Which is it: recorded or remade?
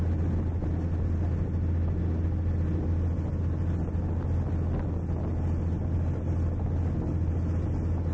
recorded